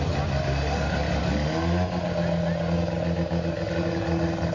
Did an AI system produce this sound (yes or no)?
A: no